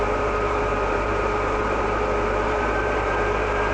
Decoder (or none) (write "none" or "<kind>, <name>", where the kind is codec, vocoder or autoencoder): vocoder, BigVGAN v2